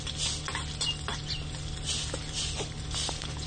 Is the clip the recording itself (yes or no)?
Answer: yes